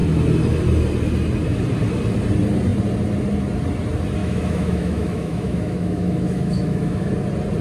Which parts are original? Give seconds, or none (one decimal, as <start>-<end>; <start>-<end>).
0.0-4.2; 7.1-7.6